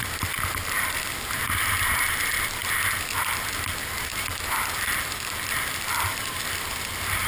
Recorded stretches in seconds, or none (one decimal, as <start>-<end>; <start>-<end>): 0.0-7.3